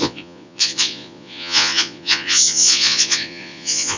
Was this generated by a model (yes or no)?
yes